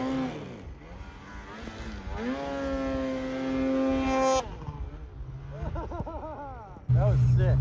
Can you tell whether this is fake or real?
real